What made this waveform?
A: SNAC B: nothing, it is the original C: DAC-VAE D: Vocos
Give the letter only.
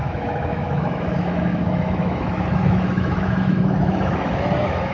C